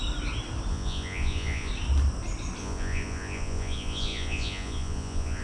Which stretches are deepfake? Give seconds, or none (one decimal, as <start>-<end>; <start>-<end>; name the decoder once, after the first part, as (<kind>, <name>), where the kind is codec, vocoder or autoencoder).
0.7-1.7 (vocoder, Vocos); 2.6-5.4